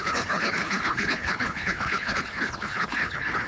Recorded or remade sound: remade